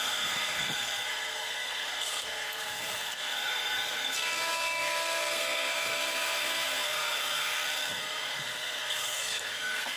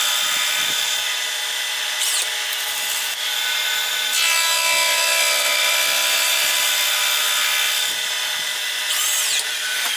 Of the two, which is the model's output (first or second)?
first